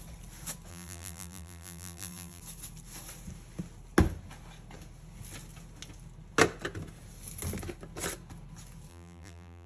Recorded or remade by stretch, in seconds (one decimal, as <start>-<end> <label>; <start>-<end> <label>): 0.0-0.7 recorded; 0.7-2.4 remade; 2.4-8.9 recorded; 8.9-9.7 remade

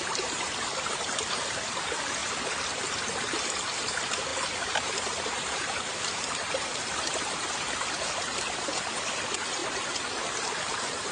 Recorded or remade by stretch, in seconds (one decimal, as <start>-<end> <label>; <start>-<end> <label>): 0.0-2.2 remade; 2.2-3.0 recorded; 3.0-9.6 remade; 9.6-10.7 recorded; 10.7-11.1 remade

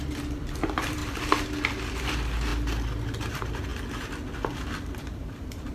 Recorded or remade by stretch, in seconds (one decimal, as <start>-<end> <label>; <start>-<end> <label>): 0.0-1.0 remade; 1.0-1.9 recorded; 1.9-2.5 remade; 2.5-3.2 recorded; 3.2-3.7 remade; 3.7-5.0 recorded; 5.0-5.7 remade

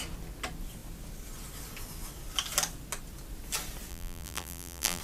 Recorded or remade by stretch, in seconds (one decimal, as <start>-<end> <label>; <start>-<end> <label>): 0.0-3.9 recorded; 3.9-5.0 remade

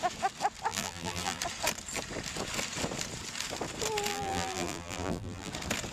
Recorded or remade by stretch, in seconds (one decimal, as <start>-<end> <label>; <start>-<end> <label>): 0.0-0.7 recorded; 0.7-1.4 remade; 1.4-4.1 recorded; 4.1-5.5 remade; 5.5-5.9 recorded